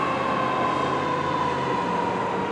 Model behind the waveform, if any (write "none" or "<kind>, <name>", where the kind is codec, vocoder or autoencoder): none